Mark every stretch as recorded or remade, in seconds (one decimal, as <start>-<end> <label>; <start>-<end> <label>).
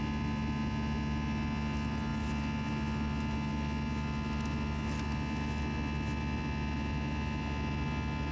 0.0-8.3 recorded